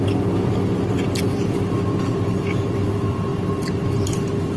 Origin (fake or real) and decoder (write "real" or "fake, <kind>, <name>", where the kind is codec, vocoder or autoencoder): real